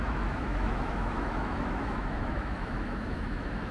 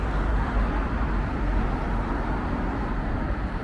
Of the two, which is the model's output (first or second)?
first